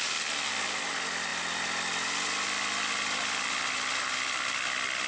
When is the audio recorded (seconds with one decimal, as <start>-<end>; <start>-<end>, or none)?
0.0-5.1